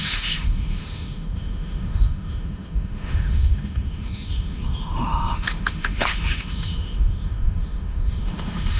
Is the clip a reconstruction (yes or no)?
yes